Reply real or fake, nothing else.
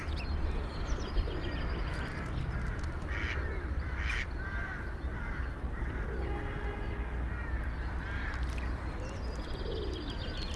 real